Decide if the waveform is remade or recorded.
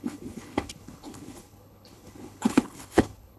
remade